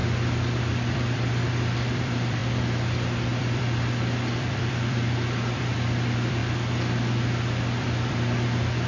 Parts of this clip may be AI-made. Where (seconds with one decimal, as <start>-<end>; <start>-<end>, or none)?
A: 0.6-2.4; 3.3-6.4; 7.8-8.9